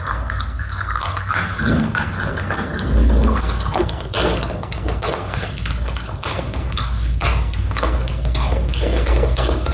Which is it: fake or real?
fake